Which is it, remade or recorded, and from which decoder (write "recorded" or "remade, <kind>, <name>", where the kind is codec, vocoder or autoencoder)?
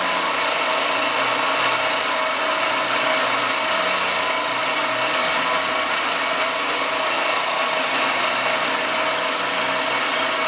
recorded